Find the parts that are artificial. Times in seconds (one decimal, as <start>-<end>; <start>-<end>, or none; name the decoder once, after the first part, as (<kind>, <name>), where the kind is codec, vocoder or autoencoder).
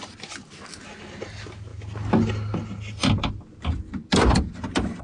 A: none